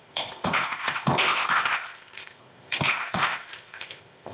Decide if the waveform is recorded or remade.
remade